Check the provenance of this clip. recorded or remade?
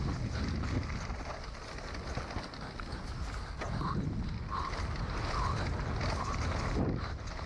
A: recorded